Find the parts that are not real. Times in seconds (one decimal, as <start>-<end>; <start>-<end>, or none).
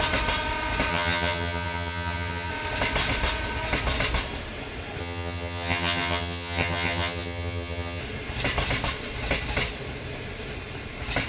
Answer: 0.9-2.5; 5.0-8.0